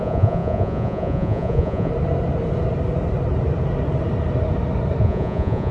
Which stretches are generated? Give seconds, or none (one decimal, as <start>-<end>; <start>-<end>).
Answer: 0.0-1.9; 5.0-5.7